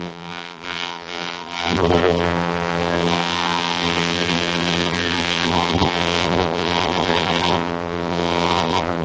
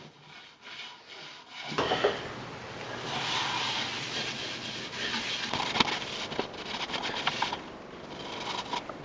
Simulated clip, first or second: first